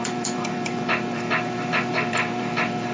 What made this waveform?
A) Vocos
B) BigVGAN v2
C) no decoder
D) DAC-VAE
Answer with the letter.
B